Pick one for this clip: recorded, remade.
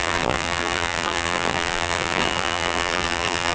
remade